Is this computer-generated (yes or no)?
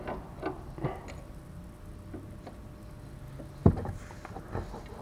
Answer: no